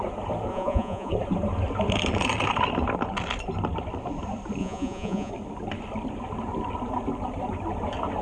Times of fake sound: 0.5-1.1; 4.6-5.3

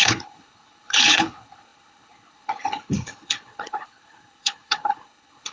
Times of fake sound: 0.0-5.5

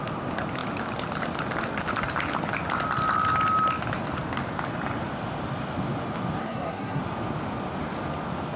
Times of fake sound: 6.4-7.0

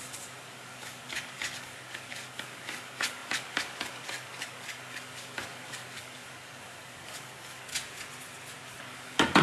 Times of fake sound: 0.0-7.7; 8.8-9.4

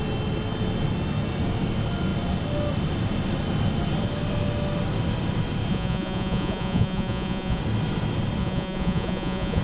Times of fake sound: 5.7-7.6; 8.4-9.6

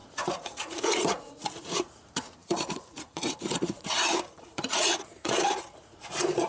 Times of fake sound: 0.0-6.5